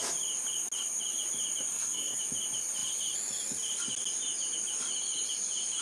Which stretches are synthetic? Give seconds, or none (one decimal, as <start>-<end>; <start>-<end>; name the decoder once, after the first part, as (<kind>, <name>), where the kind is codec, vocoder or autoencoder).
1.7-2.2 (codec, SNAC)